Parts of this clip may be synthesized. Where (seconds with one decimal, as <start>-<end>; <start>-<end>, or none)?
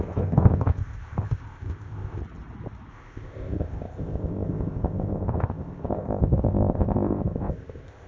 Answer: 0.0-2.2; 2.9-8.1